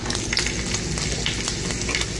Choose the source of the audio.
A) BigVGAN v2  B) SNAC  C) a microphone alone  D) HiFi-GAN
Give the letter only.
C